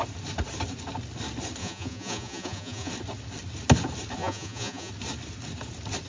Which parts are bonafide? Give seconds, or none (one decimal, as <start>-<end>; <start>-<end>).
0.0-1.6; 2.9-4.2; 4.9-6.1